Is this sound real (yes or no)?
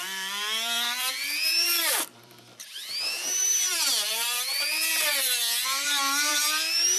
no